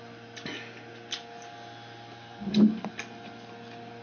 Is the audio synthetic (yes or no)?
no